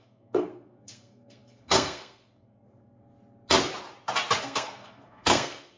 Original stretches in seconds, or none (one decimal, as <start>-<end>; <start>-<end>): 3.0-4.4